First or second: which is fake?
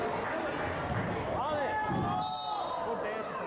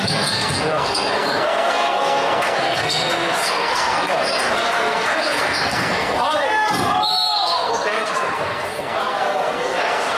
second